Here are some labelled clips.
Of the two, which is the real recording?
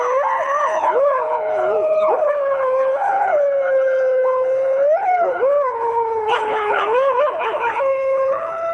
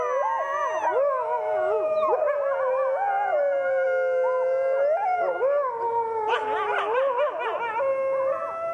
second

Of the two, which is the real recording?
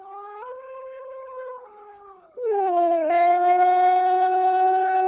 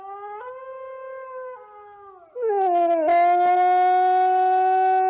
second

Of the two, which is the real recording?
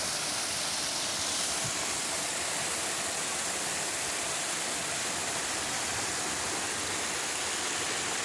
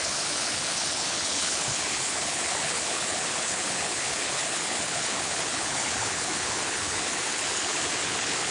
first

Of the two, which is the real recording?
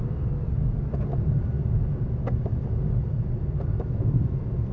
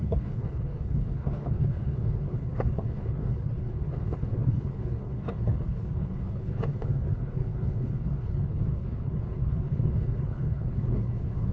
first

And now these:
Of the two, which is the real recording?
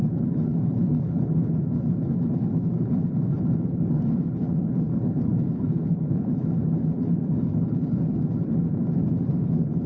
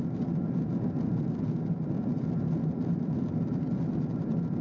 second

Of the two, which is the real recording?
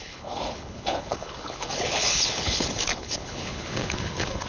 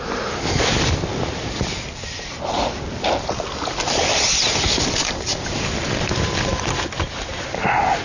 second